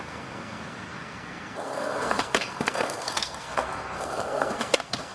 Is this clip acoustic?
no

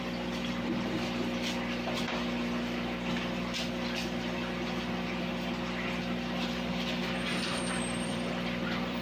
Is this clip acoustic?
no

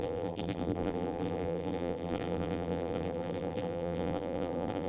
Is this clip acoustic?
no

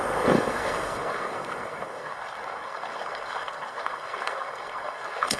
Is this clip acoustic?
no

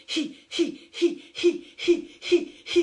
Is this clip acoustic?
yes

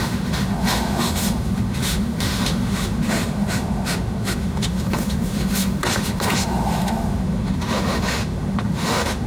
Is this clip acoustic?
no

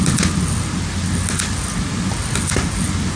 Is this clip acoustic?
yes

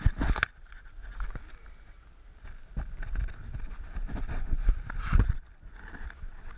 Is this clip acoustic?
yes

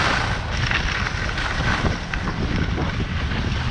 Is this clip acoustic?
yes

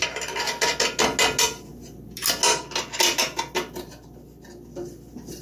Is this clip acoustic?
yes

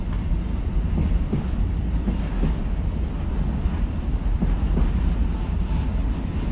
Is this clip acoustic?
yes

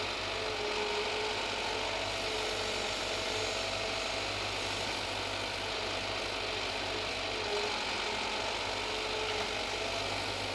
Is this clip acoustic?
yes